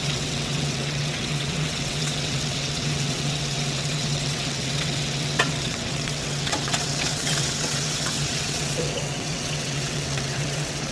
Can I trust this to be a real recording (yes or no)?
no